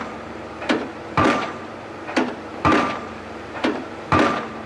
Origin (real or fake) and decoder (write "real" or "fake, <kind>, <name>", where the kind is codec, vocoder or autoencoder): fake, vocoder, BigVGAN v2